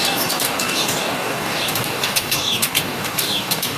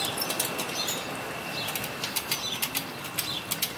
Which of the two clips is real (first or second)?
second